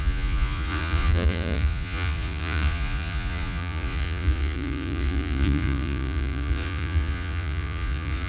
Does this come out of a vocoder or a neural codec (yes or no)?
yes